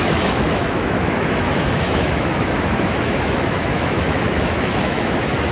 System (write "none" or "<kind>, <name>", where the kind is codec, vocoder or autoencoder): autoencoder, DAC-VAE